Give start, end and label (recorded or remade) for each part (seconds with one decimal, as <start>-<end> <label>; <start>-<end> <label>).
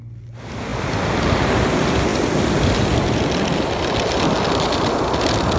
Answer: 0.0-5.6 recorded